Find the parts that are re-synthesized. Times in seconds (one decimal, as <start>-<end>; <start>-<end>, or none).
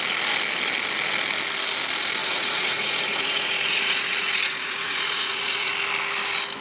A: 2.2-5.7